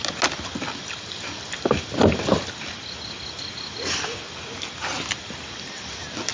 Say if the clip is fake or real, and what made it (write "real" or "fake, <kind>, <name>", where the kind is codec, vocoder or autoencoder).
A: real